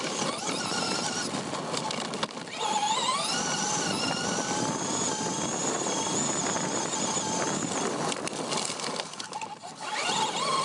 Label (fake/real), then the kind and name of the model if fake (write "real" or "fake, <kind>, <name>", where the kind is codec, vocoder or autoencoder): real